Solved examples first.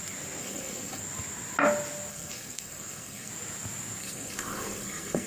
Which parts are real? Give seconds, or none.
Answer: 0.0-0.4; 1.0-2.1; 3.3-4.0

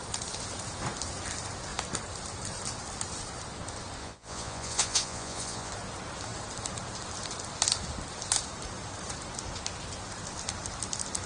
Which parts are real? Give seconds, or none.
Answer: 0.0-4.0; 5.7-11.3

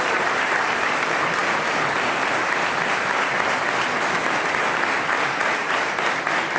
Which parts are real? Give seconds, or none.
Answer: 0.0-6.6